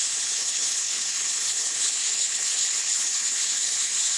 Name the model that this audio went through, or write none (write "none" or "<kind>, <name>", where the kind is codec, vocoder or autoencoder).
codec, HILCodec